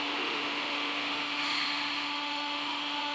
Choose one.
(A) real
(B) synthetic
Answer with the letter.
B